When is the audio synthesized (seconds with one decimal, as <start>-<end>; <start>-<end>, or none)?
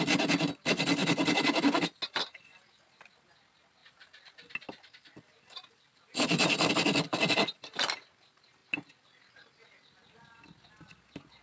3.8-6.7